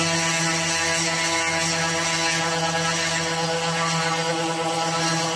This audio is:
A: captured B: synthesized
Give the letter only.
A